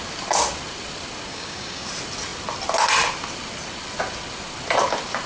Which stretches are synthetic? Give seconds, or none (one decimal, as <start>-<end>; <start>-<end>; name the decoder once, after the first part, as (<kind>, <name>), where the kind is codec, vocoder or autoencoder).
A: 1.3-1.9 (codec, DAC)